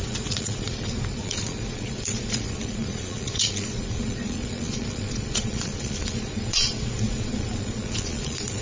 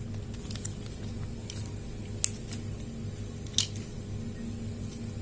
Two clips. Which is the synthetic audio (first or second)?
first